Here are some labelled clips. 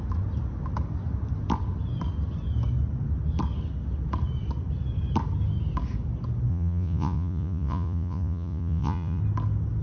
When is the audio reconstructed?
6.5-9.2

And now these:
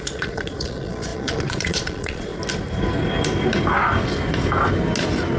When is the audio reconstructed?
0.0-2.3

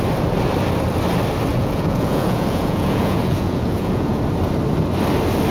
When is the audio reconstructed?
1.5-4.2

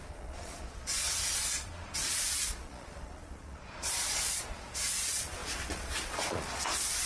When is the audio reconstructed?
0.0-7.1

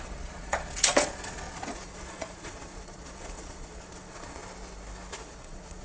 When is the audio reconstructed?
0.0-4.4; 5.2-5.8

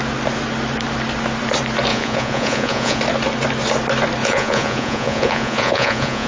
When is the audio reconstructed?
1.9-3.0; 4.2-6.3